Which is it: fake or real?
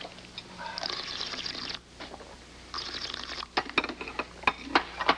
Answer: real